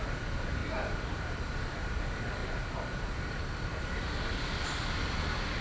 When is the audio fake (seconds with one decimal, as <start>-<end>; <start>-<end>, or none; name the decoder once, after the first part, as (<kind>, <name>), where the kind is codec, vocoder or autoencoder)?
0.6-1.5 (vocoder, BigVGAN v2); 2.4-3.8

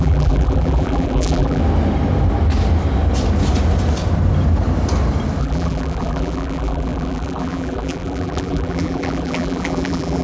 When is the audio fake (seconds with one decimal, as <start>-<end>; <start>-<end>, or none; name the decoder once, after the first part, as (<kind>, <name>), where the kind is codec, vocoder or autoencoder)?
0.0-1.6 (vocoder, BigVGAN v2); 5.4-10.2

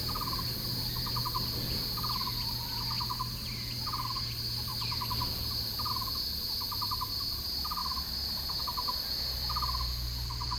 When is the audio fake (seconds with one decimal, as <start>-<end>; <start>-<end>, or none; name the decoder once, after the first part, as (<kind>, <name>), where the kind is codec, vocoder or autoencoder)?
none

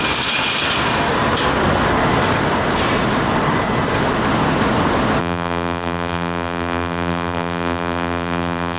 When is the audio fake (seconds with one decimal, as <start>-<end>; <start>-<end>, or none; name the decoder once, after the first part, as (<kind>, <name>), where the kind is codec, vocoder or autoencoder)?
5.2-8.8 (vocoder, BigVGAN v2)

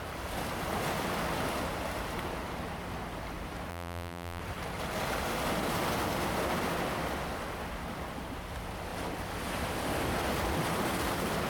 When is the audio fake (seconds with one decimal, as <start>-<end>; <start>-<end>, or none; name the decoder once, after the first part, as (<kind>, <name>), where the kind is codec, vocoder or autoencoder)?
3.7-4.4 (vocoder, BigVGAN v2)